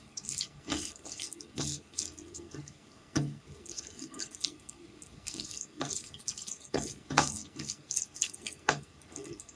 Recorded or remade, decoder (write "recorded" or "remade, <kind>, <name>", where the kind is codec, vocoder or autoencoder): remade, codec, SNAC